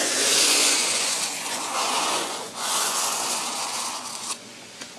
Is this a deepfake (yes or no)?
yes